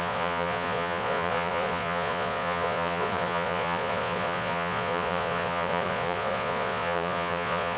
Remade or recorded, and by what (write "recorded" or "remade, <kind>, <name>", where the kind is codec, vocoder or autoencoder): remade, vocoder, Vocos